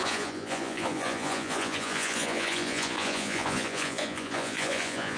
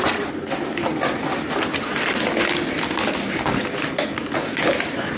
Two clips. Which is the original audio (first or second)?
second